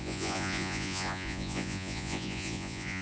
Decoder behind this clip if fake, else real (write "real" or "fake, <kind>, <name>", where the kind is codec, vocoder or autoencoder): fake, vocoder, Vocos